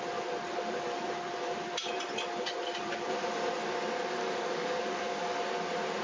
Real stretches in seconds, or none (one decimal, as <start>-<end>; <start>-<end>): 0.0-4.2; 5.4-6.0